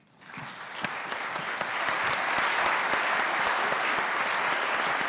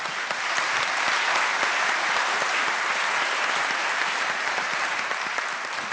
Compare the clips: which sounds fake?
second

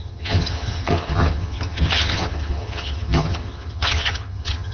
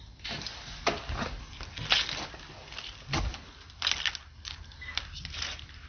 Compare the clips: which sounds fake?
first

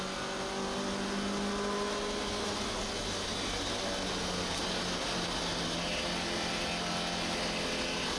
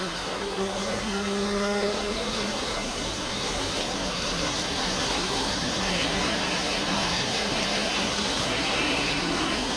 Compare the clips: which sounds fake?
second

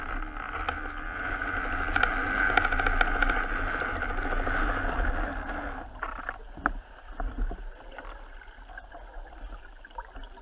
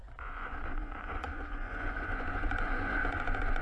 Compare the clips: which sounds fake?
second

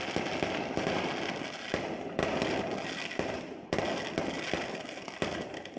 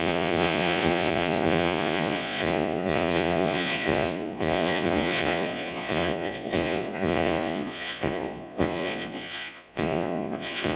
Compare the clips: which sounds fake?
second